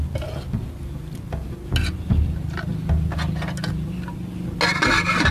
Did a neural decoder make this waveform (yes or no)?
no